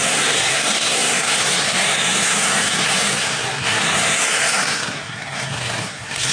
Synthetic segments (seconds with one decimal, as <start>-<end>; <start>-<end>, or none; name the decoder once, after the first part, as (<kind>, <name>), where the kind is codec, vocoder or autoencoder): 0.0-6.3 (codec, SNAC)